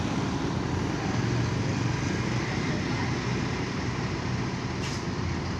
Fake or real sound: real